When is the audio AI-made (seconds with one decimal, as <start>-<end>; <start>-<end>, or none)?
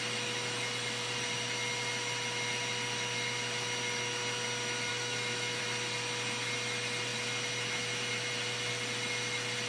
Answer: 4.9-5.6